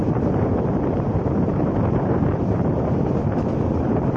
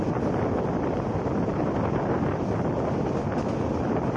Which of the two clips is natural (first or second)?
second